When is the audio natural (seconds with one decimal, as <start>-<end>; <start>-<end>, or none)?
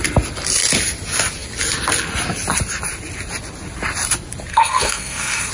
0.0-4.5